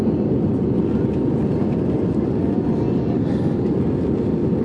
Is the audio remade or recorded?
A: recorded